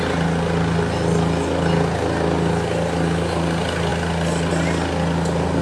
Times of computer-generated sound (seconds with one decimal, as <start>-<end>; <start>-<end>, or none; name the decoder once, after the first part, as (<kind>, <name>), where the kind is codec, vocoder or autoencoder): none